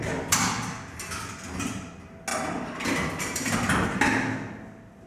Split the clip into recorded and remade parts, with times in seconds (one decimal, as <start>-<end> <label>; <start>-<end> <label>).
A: 0.0-5.1 recorded